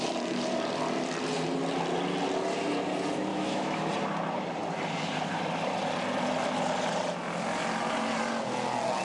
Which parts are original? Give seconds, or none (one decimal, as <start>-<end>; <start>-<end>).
0.0-3.3; 3.9-9.0